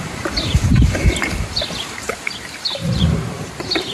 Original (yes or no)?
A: no